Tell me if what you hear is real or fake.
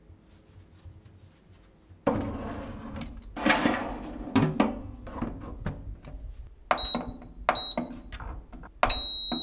real